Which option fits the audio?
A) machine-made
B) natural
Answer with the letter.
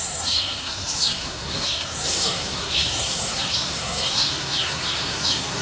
A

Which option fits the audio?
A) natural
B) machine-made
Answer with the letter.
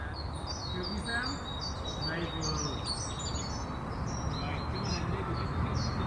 A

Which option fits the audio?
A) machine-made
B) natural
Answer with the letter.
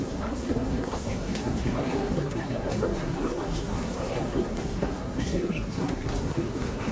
A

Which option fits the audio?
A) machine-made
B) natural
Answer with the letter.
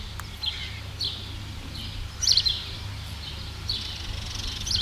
B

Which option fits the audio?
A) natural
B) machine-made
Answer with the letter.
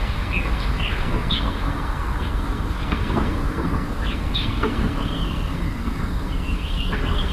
B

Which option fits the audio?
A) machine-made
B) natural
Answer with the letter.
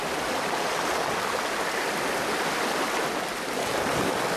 B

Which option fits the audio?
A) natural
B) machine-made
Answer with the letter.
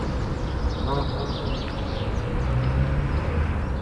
A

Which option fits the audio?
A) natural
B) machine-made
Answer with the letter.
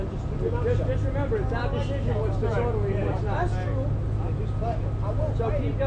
A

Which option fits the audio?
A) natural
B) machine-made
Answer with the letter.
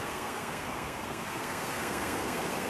B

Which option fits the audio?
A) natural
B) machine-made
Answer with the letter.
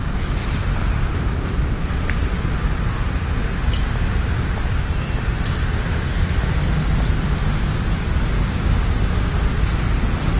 A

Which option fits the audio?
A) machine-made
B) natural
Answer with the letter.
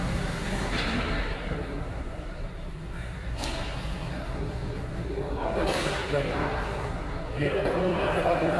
A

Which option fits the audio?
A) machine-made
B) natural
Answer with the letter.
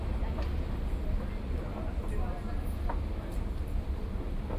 B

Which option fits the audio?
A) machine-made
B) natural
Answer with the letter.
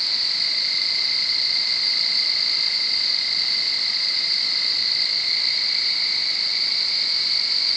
B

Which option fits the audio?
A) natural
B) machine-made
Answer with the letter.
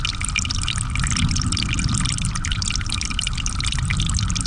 A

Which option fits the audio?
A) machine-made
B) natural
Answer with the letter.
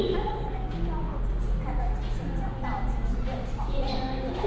B